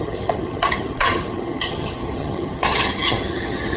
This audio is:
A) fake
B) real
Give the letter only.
A